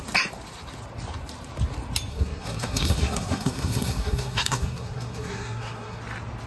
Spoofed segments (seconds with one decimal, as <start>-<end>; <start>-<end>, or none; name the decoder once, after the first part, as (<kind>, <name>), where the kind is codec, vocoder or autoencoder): 2.1-6.0 (codec, SNAC)